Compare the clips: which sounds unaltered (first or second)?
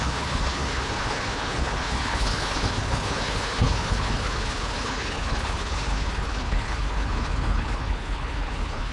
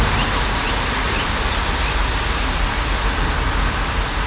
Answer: second